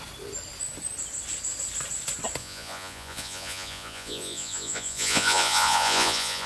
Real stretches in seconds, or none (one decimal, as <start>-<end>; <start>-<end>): 0.0-2.4

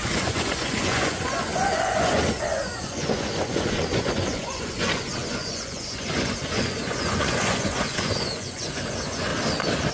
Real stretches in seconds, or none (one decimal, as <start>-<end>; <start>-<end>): 9.3-9.9

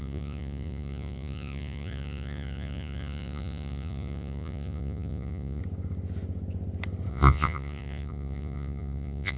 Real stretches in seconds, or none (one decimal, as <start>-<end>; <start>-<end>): 5.6-7.1

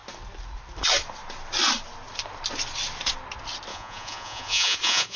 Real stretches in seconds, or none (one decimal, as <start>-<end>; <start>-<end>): 0.0-3.7

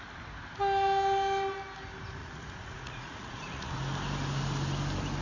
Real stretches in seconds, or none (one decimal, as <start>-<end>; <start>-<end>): 0.0-2.2; 3.8-5.2